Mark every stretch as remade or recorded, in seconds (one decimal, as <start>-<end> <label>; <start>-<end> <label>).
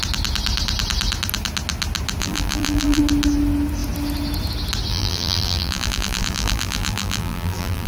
0.0-2.2 recorded; 2.2-3.0 remade; 3.0-4.9 recorded; 4.9-7.9 remade